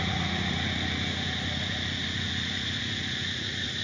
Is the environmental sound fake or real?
fake